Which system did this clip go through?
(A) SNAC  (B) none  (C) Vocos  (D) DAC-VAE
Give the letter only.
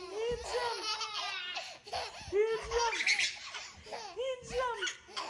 B